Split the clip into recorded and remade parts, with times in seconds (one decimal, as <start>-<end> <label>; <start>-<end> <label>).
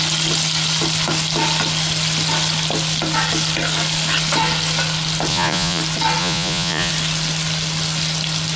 0.0-5.3 recorded; 5.3-5.8 remade; 5.8-6.2 recorded; 6.2-6.9 remade; 6.9-8.6 recorded